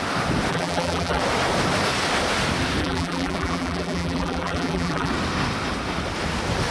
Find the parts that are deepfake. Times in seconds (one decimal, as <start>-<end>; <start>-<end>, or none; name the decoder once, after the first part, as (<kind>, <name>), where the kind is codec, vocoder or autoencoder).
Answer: 0.5-1.2 (vocoder, BigVGAN v2); 2.8-5.1